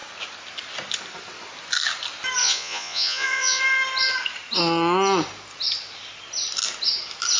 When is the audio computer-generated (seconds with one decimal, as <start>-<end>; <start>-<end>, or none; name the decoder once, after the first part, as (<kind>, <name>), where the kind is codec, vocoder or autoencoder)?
2.4-3.6 (vocoder, Vocos)